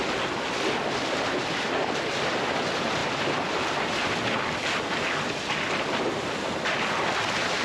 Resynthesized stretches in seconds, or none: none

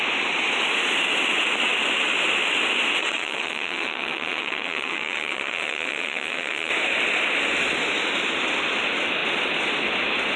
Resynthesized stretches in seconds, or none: 3.0-6.7

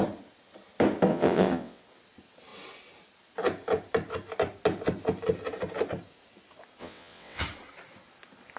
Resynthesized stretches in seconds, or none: 1.1-1.8; 6.8-7.4

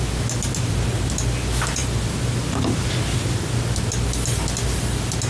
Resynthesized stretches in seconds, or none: none

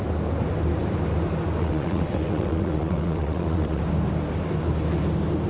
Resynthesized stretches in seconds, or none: 1.6-3.8

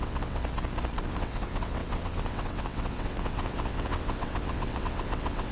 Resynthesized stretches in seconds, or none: 0.0-0.4; 1.1-5.5